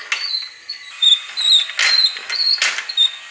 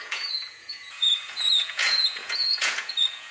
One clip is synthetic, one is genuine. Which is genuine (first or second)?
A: first